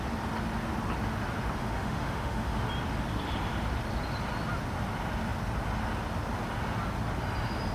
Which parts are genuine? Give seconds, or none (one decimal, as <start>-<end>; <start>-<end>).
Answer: 0.0-1.6; 2.6-7.7